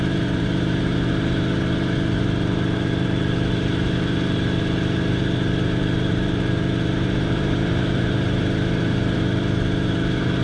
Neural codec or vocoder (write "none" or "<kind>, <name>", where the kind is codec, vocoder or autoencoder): vocoder, BigVGAN v2